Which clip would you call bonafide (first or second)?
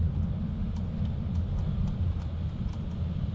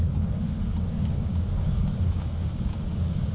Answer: first